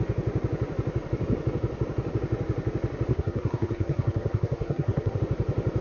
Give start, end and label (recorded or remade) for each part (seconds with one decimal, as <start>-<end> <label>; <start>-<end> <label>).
0.0-3.1 recorded; 3.1-5.2 remade; 5.2-5.8 recorded